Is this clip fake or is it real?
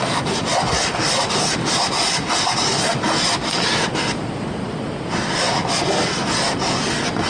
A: real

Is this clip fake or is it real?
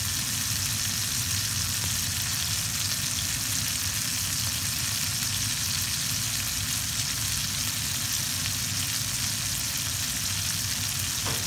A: real